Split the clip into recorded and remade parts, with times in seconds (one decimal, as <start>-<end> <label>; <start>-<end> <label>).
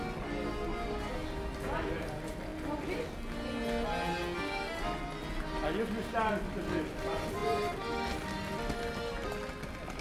0.0-10.0 recorded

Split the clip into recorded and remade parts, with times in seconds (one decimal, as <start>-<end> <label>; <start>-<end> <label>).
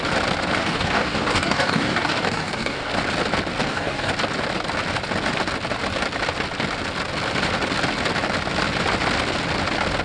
0.0-0.6 recorded; 0.6-2.9 remade; 2.9-3.6 recorded; 3.6-4.1 remade; 4.1-10.0 recorded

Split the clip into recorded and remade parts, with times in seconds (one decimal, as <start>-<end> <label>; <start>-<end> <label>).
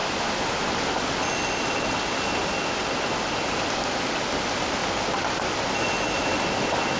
0.0-7.0 recorded